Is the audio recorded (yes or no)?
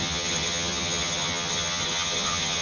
no